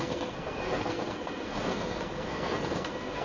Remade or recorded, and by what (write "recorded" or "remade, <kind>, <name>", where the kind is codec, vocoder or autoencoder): remade, codec, SNAC